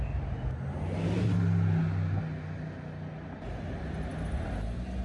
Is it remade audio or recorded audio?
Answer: recorded